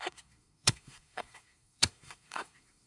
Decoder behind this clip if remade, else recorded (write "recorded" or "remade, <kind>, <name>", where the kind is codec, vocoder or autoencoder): remade, codec, SNAC